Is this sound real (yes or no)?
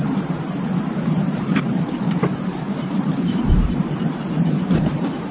no